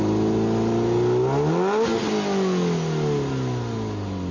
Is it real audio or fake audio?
real